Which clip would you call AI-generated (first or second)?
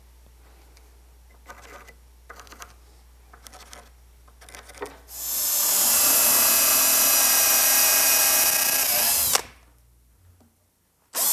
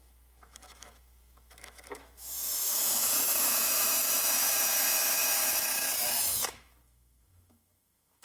second